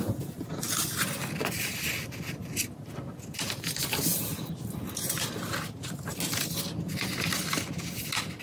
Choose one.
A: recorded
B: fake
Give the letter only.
A